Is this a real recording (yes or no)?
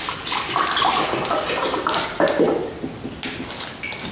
yes